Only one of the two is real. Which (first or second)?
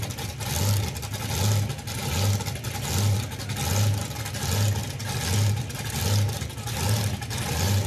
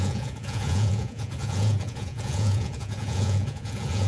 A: first